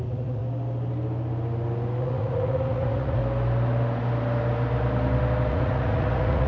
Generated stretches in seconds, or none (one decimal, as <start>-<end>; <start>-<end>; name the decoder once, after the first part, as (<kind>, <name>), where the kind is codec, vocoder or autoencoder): 0.0-0.4 (vocoder, Vocos); 2.0-3.2; 5.5-6.5